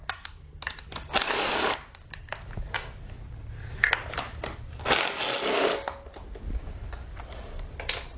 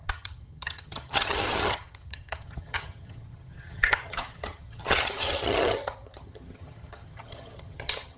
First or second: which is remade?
second